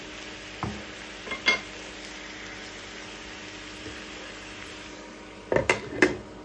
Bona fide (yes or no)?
yes